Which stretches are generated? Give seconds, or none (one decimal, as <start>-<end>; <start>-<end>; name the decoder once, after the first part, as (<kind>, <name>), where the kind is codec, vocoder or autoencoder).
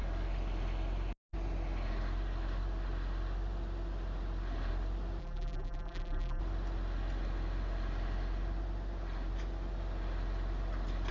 5.2-6.4 (vocoder, BigVGAN v2)